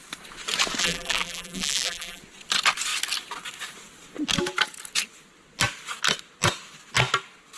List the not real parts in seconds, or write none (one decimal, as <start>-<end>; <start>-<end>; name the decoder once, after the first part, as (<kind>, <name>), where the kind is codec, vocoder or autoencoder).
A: 0.8-2.2 (vocoder, BigVGAN v2)